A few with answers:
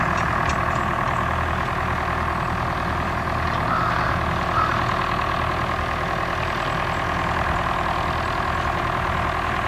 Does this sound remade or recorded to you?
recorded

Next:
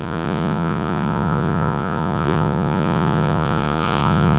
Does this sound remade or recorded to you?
remade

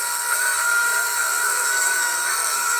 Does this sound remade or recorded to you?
remade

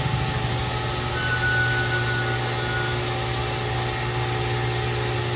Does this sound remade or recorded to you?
recorded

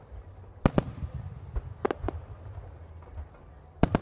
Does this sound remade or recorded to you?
recorded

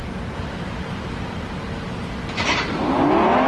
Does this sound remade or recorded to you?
recorded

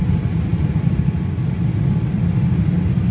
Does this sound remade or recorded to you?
recorded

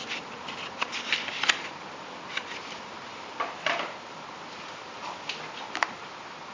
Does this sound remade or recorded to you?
remade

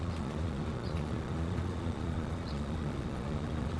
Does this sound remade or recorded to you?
remade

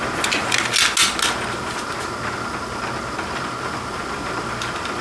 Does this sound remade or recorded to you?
recorded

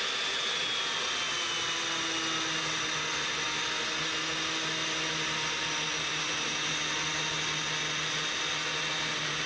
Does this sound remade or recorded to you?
recorded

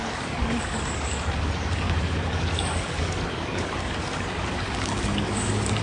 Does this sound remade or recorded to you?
remade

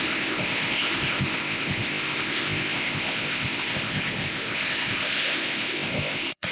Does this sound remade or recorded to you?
remade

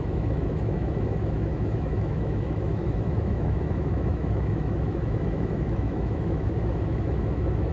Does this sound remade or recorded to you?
remade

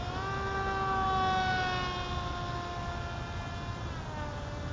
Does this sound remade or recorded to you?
recorded